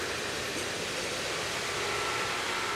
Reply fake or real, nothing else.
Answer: real